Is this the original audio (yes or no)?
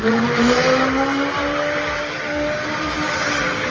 no